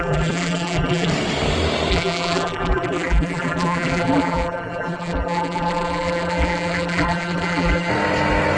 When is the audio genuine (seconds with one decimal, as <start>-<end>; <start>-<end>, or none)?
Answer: 1.1-1.9; 7.9-8.6

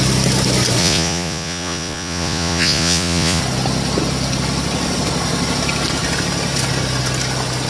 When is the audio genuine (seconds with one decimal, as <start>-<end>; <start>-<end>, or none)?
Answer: 0.0-0.8; 3.4-7.7